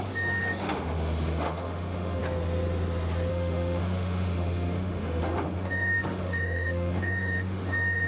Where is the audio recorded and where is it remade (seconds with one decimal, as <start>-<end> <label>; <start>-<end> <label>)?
0.0-2.2 remade; 2.2-3.3 recorded; 3.3-8.1 remade